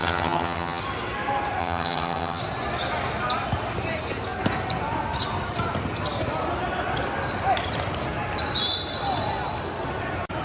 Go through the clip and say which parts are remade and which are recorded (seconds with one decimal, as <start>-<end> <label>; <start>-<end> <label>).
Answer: 0.0-0.8 remade; 0.8-1.6 recorded; 1.6-2.4 remade; 2.4-10.4 recorded